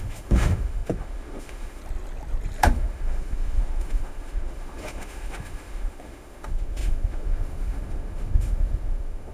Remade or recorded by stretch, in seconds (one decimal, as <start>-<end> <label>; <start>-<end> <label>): 0.0-1.8 remade; 1.8-2.6 recorded; 2.6-9.3 remade